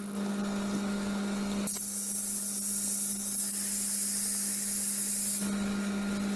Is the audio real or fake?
real